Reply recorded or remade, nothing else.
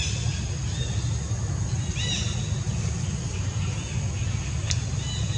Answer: recorded